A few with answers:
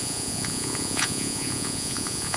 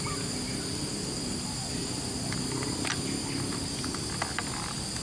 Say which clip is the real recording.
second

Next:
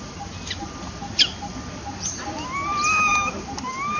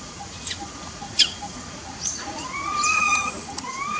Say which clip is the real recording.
first